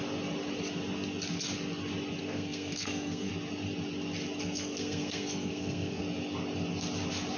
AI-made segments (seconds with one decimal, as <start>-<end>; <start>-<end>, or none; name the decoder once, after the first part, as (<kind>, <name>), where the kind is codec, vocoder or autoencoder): 2.2-3.3 (codec, SNAC); 4.4-6.0